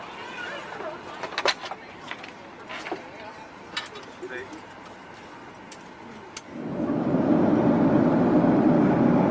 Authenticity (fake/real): real